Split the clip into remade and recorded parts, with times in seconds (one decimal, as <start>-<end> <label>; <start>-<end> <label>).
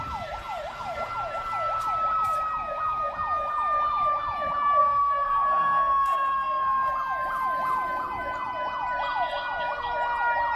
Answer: 0.0-4.8 recorded; 4.8-6.9 remade; 6.9-10.6 recorded